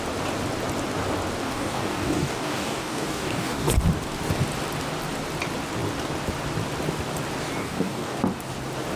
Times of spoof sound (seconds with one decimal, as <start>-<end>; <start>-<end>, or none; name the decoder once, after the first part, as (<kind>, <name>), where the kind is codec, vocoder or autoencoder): 1.4-3.7 (codec, DAC); 7.6-8.2